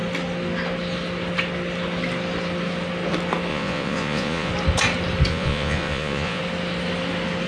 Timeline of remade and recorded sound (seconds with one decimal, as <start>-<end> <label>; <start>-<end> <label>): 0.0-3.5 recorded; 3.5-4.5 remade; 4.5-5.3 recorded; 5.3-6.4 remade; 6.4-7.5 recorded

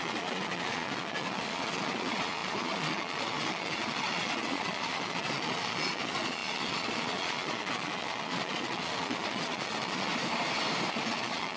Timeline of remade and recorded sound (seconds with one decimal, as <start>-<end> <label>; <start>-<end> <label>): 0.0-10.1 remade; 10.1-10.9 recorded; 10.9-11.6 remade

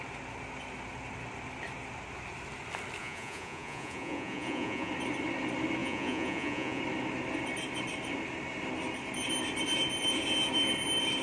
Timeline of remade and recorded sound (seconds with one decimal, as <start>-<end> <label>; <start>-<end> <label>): 0.0-3.0 recorded; 3.0-4.9 remade; 4.9-5.8 recorded; 5.8-6.8 remade; 6.8-11.2 recorded

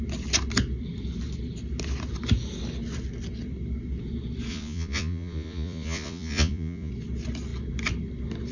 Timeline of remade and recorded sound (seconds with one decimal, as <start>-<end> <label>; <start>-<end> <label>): 0.0-4.5 recorded; 4.5-6.9 remade; 6.9-8.5 recorded

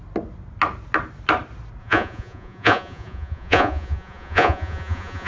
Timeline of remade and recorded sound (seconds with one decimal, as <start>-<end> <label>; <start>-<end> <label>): 0.0-1.8 recorded; 1.8-5.3 remade

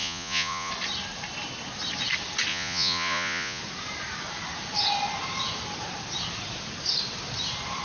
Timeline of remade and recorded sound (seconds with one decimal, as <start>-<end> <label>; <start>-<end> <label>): 0.0-0.7 remade; 0.7-2.5 recorded; 2.5-3.6 remade; 3.6-7.8 recorded

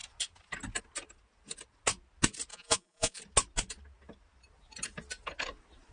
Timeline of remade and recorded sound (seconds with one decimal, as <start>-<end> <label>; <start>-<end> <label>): 0.0-2.5 recorded; 2.5-3.2 remade; 3.2-5.9 recorded

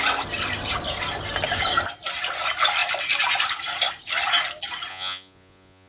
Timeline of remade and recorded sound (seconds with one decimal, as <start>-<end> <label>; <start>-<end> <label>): 0.0-4.9 recorded; 4.9-5.9 remade